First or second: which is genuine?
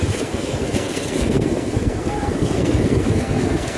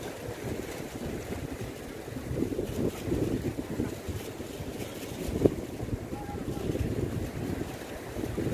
second